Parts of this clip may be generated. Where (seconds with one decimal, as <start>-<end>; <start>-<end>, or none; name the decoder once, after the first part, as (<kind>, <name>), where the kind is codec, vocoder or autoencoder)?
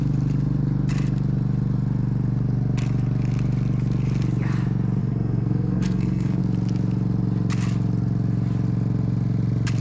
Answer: 5.0-6.4 (codec, SNAC)